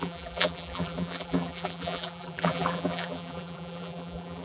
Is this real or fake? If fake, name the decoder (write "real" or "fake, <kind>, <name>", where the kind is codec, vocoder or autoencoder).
fake, vocoder, BigVGAN v2